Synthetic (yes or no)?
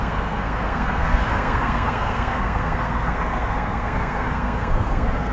yes